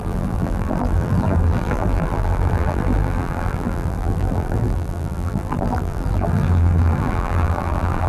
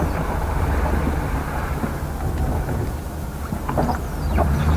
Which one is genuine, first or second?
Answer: second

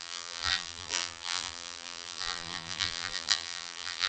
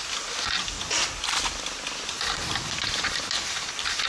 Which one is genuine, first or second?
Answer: second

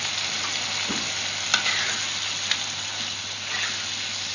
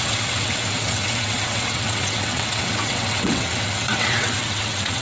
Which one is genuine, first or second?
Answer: first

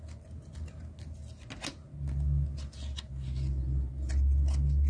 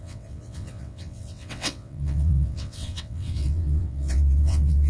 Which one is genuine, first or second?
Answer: first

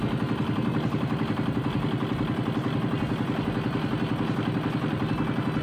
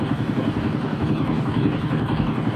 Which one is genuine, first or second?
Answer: first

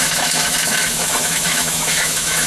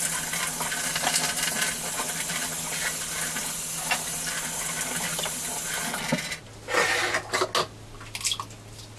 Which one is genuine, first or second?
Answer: second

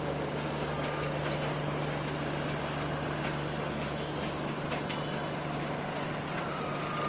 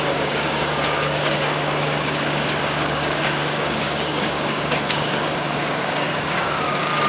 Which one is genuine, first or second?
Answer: first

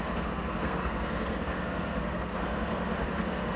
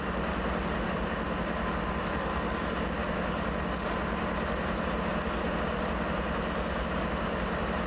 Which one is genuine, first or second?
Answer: second